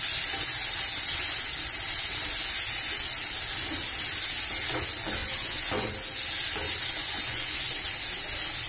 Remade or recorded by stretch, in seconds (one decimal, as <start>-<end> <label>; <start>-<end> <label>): 0.0-5.2 recorded; 5.2-5.9 remade; 5.9-7.0 recorded; 7.0-7.7 remade; 7.7-8.7 recorded